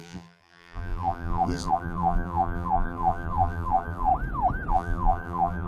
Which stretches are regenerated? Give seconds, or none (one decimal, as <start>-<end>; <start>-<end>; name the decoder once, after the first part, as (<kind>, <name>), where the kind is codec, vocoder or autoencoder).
0.0-4.1 (vocoder, BigVGAN v2); 4.7-5.7